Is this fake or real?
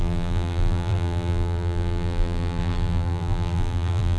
fake